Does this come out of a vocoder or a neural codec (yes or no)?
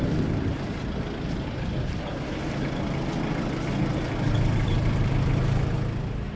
no